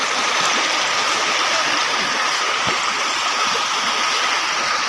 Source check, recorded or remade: recorded